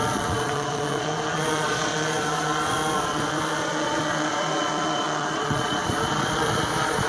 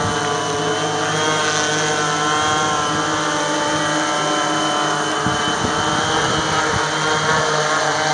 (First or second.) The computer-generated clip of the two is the first